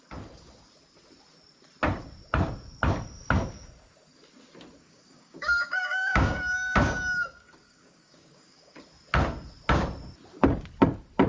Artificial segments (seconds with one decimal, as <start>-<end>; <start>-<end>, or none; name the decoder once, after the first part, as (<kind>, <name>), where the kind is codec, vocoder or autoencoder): 4.8-8.8 (codec, DAC)